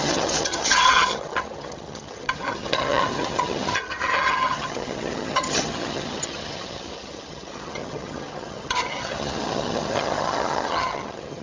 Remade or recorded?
remade